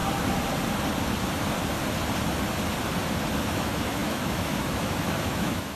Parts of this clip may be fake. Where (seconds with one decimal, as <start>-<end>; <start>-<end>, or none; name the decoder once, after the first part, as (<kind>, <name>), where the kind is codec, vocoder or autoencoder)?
3.5-5.8 (autoencoder, DAC-VAE)